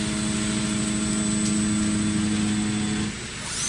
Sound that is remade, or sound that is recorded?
recorded